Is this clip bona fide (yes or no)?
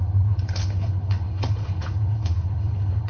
no